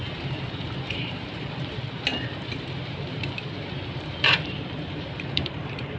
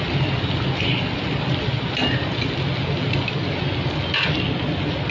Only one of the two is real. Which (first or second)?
second